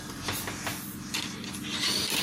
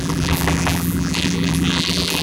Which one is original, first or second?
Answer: first